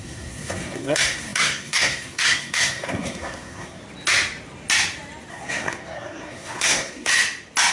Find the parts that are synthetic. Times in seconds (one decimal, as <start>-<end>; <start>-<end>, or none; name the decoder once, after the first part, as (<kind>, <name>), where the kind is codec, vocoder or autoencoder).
0.0-3.8 (codec, SNAC); 5.3-7.1